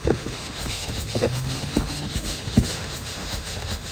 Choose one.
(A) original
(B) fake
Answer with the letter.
B